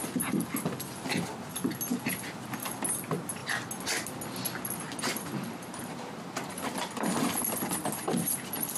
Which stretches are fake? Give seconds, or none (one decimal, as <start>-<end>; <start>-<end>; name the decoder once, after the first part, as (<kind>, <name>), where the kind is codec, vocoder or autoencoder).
none